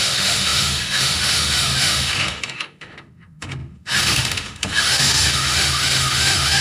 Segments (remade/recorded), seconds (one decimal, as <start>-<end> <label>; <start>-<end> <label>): 0.0-6.6 remade